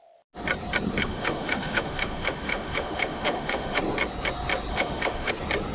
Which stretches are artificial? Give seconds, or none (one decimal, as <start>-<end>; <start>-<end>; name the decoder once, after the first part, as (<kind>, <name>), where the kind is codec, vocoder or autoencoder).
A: 1.0-3.8 (autoencoder, DAC-VAE); 4.7-5.3